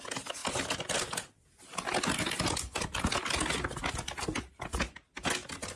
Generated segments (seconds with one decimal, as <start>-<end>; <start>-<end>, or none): none